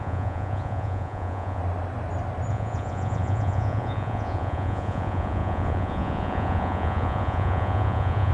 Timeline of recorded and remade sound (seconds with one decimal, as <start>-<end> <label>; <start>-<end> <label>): 0.0-1.6 remade; 1.6-2.5 recorded; 2.5-8.3 remade